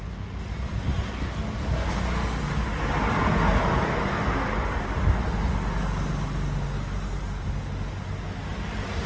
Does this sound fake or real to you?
real